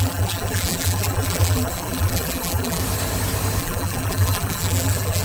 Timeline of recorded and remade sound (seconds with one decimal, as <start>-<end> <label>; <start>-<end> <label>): 0.0-2.8 remade; 2.8-3.6 recorded; 3.6-5.2 remade